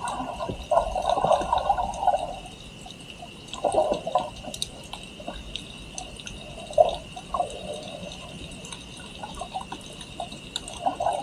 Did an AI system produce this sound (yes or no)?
no